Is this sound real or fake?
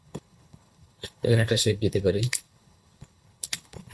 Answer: fake